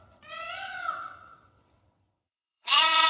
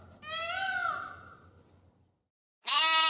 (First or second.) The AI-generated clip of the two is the first